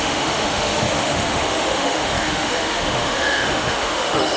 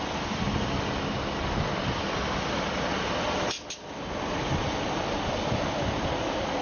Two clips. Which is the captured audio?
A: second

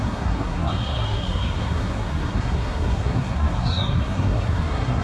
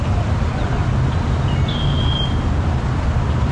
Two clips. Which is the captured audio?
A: second